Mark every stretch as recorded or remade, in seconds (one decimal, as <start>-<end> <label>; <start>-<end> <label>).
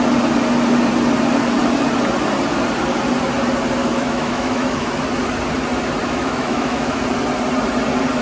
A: 0.0-3.8 recorded; 3.8-4.9 remade; 4.9-6.0 recorded; 6.0-7.0 remade; 7.0-8.2 recorded